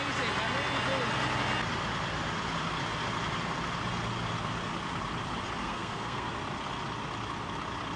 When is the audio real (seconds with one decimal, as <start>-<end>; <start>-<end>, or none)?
0.0-5.6; 6.3-8.0